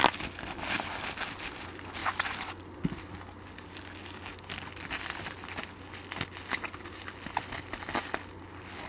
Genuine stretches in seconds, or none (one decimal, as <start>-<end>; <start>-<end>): 0.0-8.9